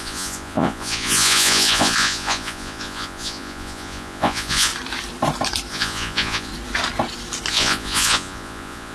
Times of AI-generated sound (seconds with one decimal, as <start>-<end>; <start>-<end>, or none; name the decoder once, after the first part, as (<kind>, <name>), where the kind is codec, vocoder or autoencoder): 0.0-4.7 (vocoder, Vocos); 5.7-6.5; 7.5-8.9